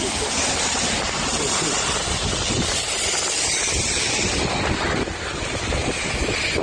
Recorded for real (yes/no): yes